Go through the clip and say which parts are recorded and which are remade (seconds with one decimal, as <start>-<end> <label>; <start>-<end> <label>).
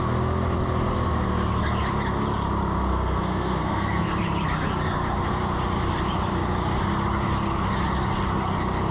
0.0-2.9 recorded; 2.9-4.1 remade; 4.1-8.9 recorded